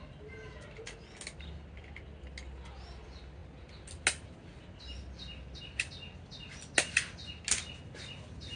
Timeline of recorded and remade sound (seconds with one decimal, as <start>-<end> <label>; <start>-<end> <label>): 0.0-8.6 recorded